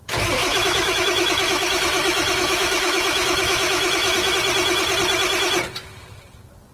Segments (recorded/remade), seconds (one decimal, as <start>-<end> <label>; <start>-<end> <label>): 0.0-0.4 recorded; 0.4-4.3 remade; 4.3-6.7 recorded